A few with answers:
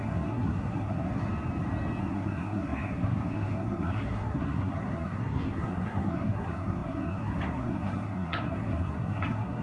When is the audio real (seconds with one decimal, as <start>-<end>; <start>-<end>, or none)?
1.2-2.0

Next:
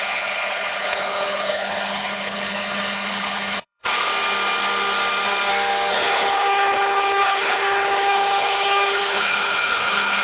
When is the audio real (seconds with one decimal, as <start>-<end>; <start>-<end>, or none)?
4.1-5.9

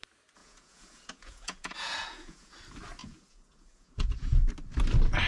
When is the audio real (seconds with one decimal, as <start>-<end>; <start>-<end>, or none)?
0.0-0.4; 2.5-3.0; 4.5-5.3